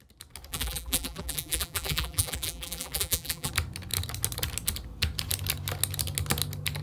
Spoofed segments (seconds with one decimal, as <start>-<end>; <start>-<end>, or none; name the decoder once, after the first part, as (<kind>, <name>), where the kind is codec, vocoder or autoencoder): 0.5-3.5 (vocoder, BigVGAN v2)